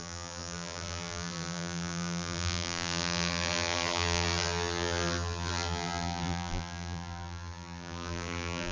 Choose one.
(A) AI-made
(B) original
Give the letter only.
A